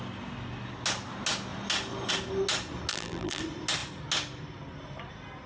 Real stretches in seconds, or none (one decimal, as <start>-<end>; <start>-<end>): 0.0-2.9; 3.4-5.5